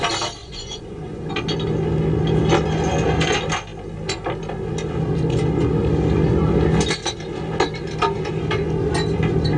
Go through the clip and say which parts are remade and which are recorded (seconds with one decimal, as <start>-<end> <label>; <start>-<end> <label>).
0.0-0.4 recorded; 0.4-1.3 remade; 1.3-9.6 recorded